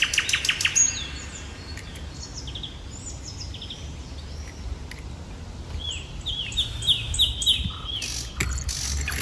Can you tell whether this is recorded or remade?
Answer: recorded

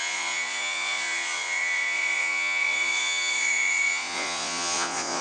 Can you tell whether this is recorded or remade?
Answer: remade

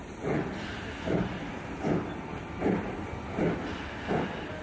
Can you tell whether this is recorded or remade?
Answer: recorded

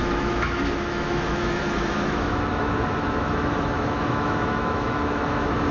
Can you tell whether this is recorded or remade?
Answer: remade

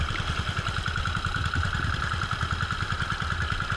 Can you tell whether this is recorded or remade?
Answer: recorded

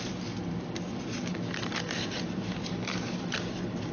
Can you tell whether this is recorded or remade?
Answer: recorded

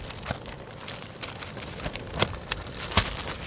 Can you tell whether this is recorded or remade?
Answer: remade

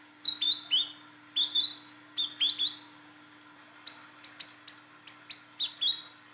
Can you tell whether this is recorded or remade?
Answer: recorded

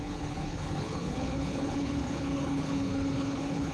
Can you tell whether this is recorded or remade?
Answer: remade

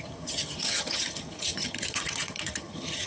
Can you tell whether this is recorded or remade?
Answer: remade